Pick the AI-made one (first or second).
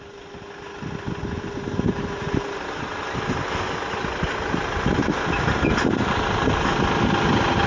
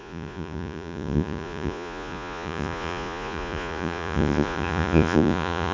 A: second